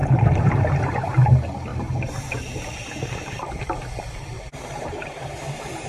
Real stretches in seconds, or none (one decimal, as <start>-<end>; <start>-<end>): 0.6-1.7; 5.2-5.9